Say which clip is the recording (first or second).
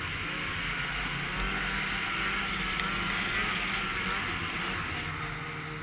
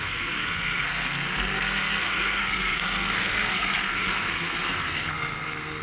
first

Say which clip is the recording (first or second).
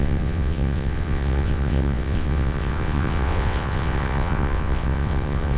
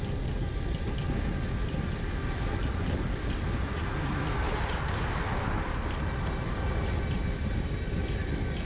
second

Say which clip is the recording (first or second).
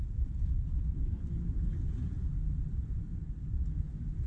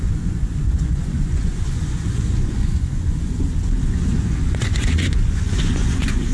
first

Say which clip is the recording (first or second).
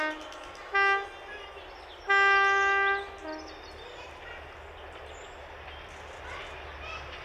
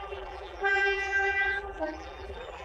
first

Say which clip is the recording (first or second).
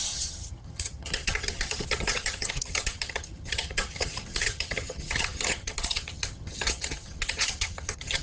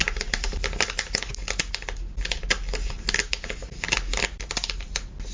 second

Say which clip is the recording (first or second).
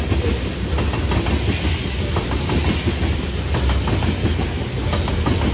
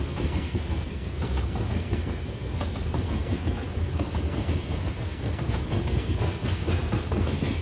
first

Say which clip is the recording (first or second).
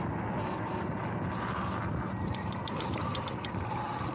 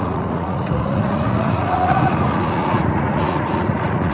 first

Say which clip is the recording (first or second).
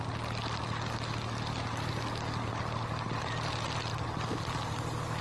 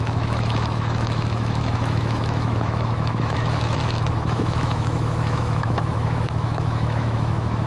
first